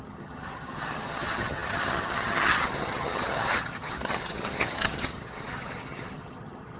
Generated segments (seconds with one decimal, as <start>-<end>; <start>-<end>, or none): 0.0-6.8